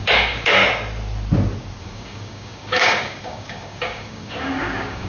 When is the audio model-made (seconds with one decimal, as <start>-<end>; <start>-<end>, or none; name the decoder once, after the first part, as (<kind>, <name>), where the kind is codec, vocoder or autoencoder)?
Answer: 0.0-0.6 (codec, DAC); 1.8-5.1

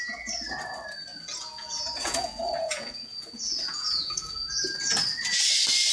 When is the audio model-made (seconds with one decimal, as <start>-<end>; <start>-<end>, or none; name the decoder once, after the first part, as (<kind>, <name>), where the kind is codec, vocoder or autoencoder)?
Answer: 1.1-4.6 (vocoder, Vocos)